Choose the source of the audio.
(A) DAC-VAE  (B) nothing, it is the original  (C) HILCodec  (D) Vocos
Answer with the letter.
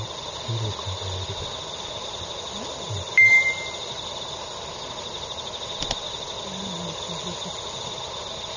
B